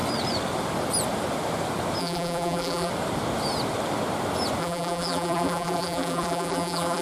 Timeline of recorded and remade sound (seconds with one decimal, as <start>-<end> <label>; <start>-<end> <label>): 0.0-2.0 recorded; 2.0-2.9 remade; 2.9-4.6 recorded; 4.6-7.0 remade